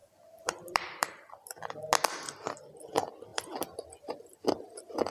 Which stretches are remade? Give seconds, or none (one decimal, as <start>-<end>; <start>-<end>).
0.0-1.9

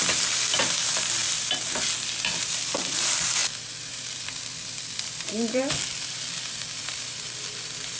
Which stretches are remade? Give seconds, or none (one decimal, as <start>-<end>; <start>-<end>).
0.0-1.2; 2.2-8.0

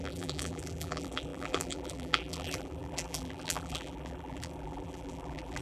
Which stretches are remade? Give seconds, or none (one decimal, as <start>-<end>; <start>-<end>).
0.0-5.6

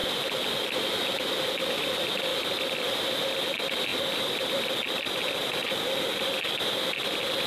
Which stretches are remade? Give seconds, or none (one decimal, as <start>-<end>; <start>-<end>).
none

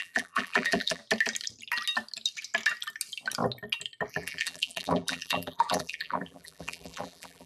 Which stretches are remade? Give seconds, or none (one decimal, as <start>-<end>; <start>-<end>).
0.0-1.0; 4.1-7.5